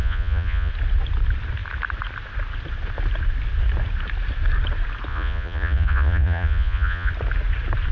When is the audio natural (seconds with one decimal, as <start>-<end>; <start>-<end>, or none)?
0.7-5.1; 7.1-7.9